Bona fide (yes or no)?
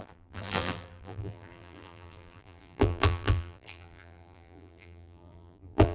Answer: no